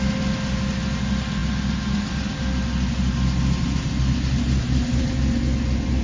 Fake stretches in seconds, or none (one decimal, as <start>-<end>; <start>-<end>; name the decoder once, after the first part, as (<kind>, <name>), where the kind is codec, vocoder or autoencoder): none